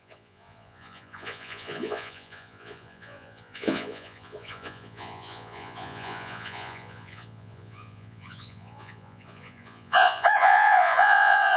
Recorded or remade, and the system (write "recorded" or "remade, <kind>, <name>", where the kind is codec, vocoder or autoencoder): remade, vocoder, Vocos